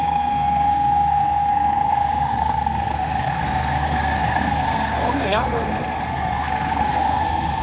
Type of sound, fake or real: fake